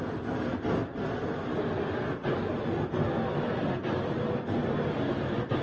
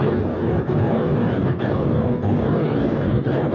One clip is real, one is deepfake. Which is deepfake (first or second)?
second